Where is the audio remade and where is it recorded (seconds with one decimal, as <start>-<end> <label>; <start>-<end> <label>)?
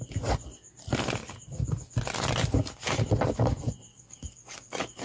0.0-3.9 recorded; 3.9-5.0 remade